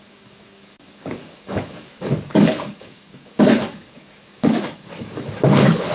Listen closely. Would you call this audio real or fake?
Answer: fake